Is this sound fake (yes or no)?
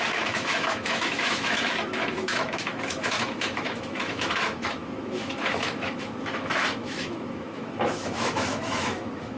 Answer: yes